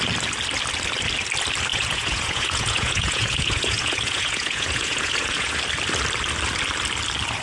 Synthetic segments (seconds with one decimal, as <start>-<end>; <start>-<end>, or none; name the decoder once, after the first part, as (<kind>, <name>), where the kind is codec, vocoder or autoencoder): 1.7-5.6 (vocoder, Vocos)